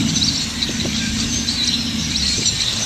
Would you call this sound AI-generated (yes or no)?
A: yes